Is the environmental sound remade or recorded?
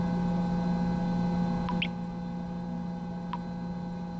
recorded